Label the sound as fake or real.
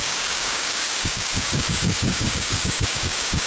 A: fake